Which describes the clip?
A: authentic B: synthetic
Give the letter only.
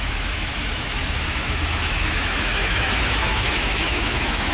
B